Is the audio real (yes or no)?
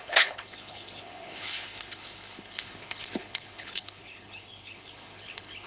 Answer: no